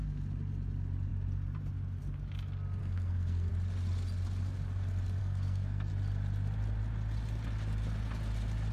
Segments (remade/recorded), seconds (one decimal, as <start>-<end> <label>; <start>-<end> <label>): 0.0-2.8 recorded; 2.8-3.5 remade; 3.5-5.2 recorded; 5.2-5.9 remade; 5.9-8.7 recorded